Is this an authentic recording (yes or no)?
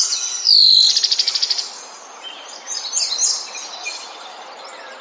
yes